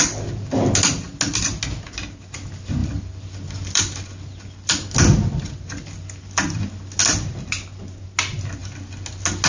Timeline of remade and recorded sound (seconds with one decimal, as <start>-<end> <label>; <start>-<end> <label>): 0.0-2.8 recorded; 2.8-3.8 remade; 3.8-9.5 recorded

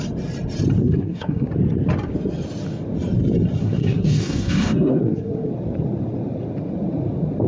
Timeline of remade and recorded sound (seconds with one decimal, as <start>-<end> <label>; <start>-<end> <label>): 0.0-0.8 recorded; 0.8-1.5 remade; 1.5-3.6 recorded; 3.6-5.5 remade; 5.5-7.5 recorded

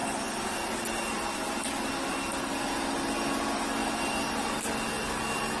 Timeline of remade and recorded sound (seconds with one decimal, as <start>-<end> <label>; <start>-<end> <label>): 0.0-5.6 recorded

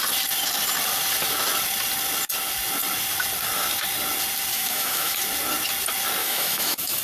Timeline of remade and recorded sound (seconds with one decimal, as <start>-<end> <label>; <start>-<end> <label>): 0.0-4.5 recorded; 4.5-5.2 remade; 5.2-6.2 recorded; 6.2-7.0 remade

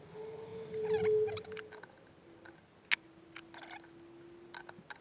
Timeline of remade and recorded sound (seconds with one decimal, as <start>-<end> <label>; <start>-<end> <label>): 0.0-5.0 recorded

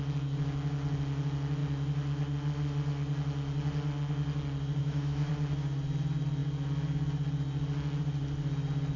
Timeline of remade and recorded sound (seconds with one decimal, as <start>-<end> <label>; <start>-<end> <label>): 0.0-4.8 recorded; 4.8-5.3 remade; 5.3-9.0 recorded

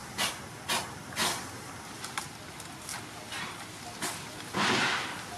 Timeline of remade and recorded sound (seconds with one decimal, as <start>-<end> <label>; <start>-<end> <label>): 0.0-5.4 recorded